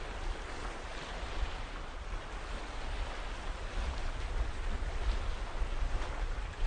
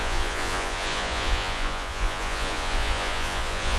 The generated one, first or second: second